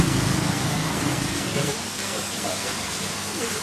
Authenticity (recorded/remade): remade